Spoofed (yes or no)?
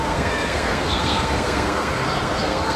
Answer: yes